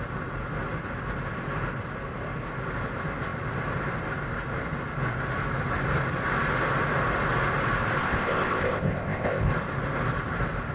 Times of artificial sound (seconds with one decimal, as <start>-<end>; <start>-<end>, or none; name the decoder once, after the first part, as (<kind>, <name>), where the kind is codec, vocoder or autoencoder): 8.0-9.5 (codec, ZipCodec)